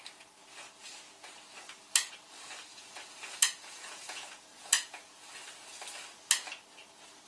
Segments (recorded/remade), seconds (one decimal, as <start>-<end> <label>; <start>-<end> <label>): 0.0-2.7 recorded; 2.7-5.7 remade; 5.7-7.3 recorded